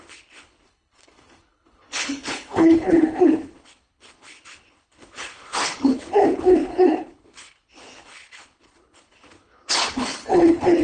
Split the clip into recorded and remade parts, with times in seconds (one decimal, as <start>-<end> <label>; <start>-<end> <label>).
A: 0.0-10.8 remade